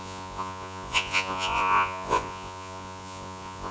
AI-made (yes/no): yes